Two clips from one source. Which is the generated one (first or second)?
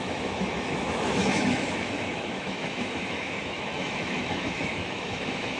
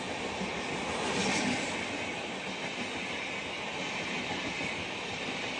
first